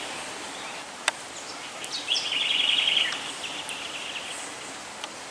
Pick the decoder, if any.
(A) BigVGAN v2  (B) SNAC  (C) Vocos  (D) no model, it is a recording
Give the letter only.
D